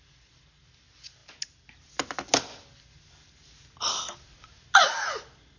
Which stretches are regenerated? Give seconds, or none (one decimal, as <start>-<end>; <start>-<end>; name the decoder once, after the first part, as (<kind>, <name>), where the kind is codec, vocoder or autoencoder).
none